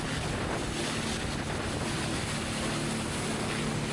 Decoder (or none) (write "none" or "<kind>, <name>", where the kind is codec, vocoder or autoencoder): none